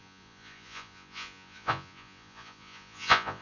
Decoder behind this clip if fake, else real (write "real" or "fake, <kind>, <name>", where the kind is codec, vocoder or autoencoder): fake, vocoder, Vocos